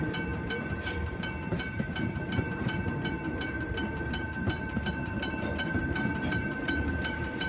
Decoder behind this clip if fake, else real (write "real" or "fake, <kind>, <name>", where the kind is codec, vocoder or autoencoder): fake, vocoder, BigVGAN v2